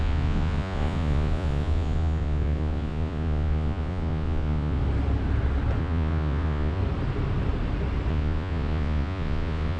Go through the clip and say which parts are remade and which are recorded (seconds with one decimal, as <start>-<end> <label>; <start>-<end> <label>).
0.0-4.8 remade; 4.8-5.8 recorded; 5.8-6.8 remade; 6.8-8.1 recorded; 8.1-9.8 remade